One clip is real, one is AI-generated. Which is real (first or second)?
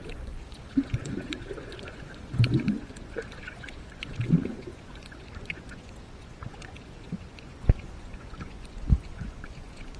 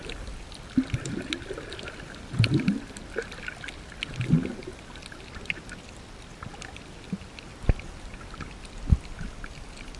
second